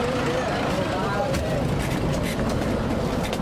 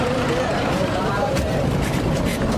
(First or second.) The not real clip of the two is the second